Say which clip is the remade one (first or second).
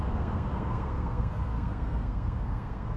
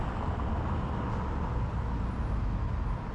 first